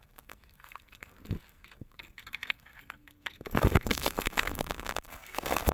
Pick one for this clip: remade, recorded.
remade